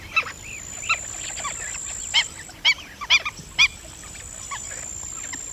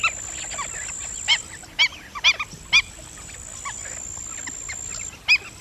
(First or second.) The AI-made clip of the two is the first